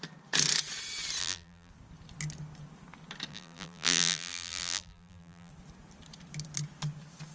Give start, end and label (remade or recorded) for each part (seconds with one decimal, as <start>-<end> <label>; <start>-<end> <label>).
0.0-1.2 recorded; 1.2-1.7 remade; 1.7-3.3 recorded; 3.3-5.5 remade; 5.5-7.3 recorded